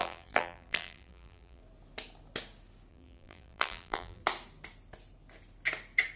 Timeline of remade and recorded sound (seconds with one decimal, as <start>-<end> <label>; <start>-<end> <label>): 0.0-1.6 remade; 1.6-2.9 recorded; 2.9-4.2 remade; 4.2-6.2 recorded